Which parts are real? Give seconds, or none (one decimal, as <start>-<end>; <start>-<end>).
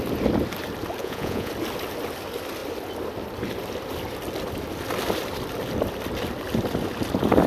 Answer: 0.0-1.0; 1.5-7.5